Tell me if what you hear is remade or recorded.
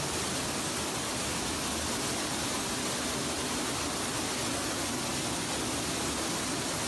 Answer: recorded